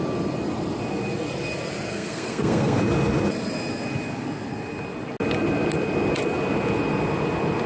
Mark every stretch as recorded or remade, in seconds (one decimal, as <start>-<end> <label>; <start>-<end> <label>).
0.0-1.9 recorded; 1.9-2.8 remade; 2.8-7.7 recorded

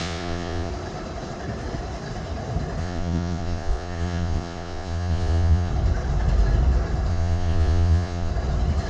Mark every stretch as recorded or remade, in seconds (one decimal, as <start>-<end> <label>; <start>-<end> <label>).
0.0-0.7 remade; 0.7-2.8 recorded; 2.8-5.7 remade; 5.7-7.1 recorded; 7.1-8.3 remade; 8.3-8.9 recorded

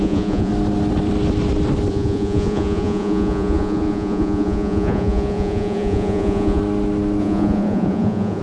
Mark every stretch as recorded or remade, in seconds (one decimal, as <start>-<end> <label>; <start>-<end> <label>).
0.0-0.5 remade; 0.5-1.9 recorded; 1.9-6.6 remade; 6.6-7.2 recorded; 7.2-8.4 remade

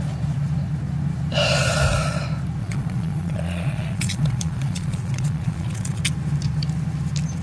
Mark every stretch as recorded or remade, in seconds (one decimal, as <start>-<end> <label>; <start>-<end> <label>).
0.0-2.6 recorded; 2.6-6.0 remade; 6.0-7.4 recorded

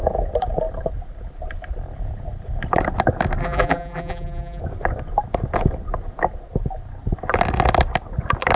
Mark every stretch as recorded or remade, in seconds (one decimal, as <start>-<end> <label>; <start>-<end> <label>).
0.0-3.4 recorded; 3.4-4.6 remade; 4.6-8.6 recorded

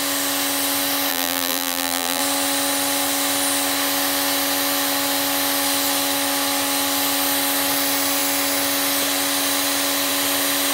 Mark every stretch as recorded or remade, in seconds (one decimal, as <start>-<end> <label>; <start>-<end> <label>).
0.0-1.1 recorded; 1.1-2.2 remade; 2.2-10.7 recorded

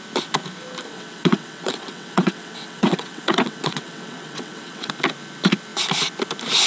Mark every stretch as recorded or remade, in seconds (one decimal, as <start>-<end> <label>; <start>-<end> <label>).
0.0-0.9 recorded; 0.9-4.9 remade; 4.9-6.7 recorded

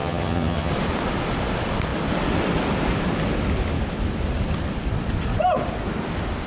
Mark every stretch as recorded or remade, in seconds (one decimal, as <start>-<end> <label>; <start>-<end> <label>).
0.0-0.7 remade; 0.7-6.5 recorded